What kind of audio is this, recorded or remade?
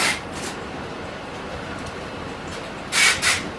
remade